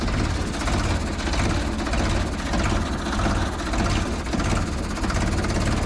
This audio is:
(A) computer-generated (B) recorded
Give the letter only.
B